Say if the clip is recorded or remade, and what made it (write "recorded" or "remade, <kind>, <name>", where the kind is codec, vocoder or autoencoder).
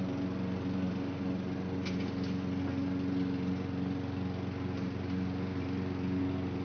recorded